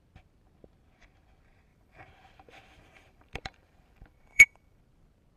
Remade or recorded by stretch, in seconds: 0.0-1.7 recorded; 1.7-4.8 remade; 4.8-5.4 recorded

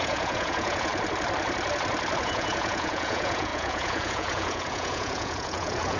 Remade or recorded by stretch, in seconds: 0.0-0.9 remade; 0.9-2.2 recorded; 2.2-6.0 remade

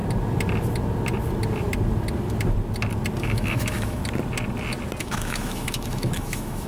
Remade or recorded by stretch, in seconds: 0.0-3.2 recorded; 3.2-4.0 remade; 4.0-5.0 recorded; 5.0-6.7 remade